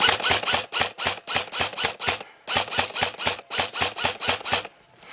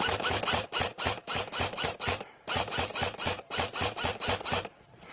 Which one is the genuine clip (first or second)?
first